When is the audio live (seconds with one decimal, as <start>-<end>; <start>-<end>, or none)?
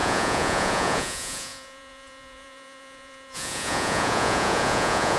none